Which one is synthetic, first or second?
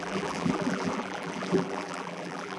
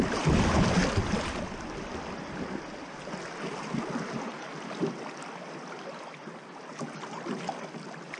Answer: first